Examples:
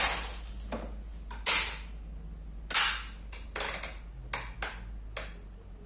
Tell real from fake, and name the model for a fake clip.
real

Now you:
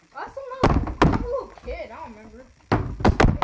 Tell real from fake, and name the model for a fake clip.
real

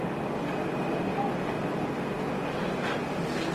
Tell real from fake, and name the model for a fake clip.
real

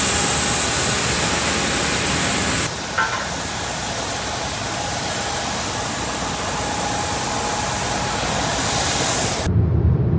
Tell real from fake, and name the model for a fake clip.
real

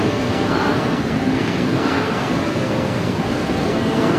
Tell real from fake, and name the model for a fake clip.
fake, codec, SNAC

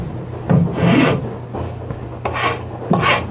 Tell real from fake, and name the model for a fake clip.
real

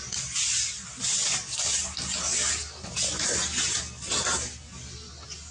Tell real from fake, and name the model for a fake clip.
real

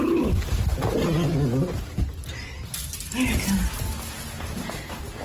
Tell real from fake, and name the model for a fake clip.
real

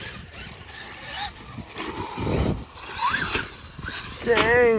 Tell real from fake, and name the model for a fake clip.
real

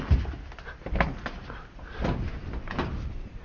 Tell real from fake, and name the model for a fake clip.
real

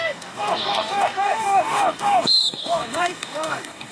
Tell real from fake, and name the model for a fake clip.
fake, codec, DAC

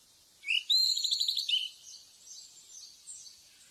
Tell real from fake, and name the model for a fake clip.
real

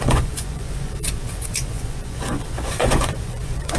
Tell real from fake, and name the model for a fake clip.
fake, vocoder, Vocos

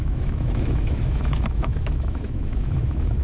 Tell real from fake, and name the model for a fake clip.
fake, autoencoder, DAC-VAE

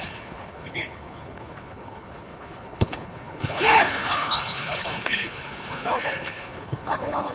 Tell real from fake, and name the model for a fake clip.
fake, codec, HILCodec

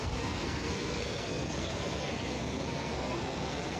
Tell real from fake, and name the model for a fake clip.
fake, codec, SNAC